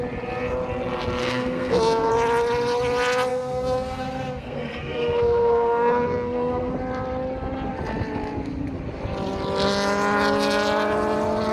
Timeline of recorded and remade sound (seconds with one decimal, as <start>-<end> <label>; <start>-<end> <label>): 0.0-1.2 recorded; 1.2-2.1 remade; 2.1-3.3 recorded; 3.3-6.7 remade; 6.7-11.5 recorded